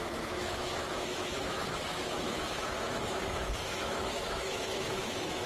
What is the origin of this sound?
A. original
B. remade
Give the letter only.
B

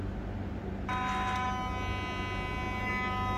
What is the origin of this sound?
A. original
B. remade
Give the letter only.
A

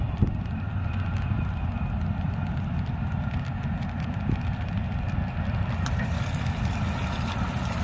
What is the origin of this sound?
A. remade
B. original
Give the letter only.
B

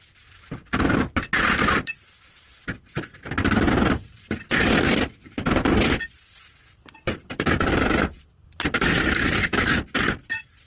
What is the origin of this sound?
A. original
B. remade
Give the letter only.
A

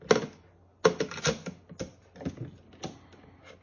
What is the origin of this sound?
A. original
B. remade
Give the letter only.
A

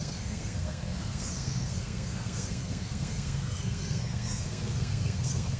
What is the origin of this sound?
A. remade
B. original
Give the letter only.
A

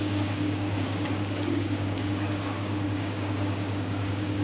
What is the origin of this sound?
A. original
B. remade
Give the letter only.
B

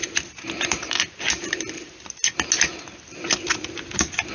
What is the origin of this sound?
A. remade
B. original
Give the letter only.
B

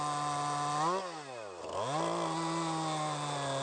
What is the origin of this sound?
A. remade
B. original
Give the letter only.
B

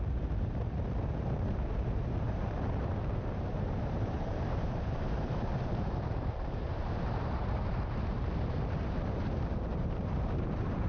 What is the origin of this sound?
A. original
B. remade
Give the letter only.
B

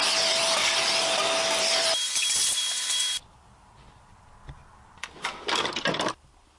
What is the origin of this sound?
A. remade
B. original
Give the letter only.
A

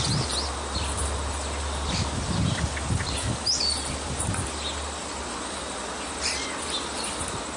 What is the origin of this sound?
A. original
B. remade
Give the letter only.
A